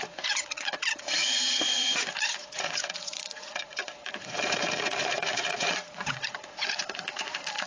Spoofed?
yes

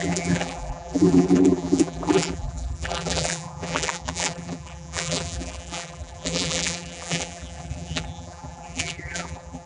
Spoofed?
yes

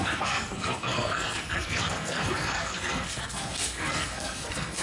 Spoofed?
yes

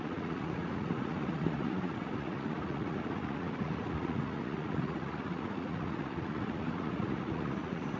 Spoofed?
yes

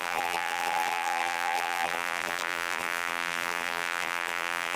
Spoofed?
yes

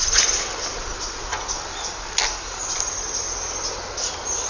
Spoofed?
no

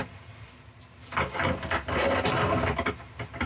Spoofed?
no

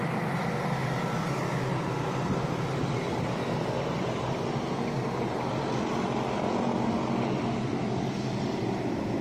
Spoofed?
no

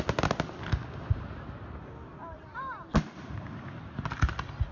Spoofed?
no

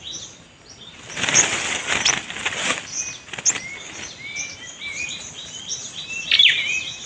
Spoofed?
no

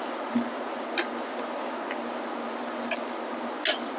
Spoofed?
no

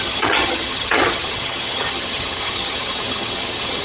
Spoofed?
yes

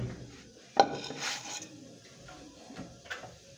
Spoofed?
no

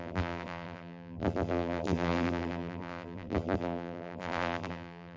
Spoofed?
yes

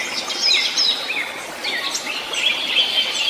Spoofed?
no